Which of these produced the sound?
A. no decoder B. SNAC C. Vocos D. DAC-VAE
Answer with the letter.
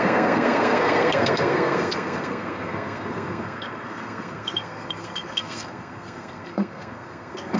B